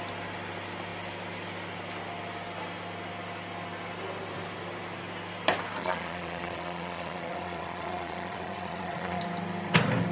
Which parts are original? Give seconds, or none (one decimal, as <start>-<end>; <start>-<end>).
0.0-5.8; 9.2-10.1